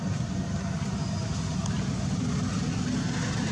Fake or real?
real